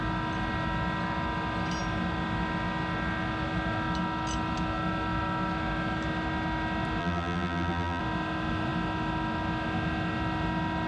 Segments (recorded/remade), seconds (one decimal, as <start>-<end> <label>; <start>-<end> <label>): 0.0-7.0 recorded; 7.0-8.0 remade; 8.0-10.9 recorded